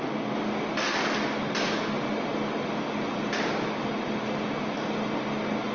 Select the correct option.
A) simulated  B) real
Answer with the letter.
B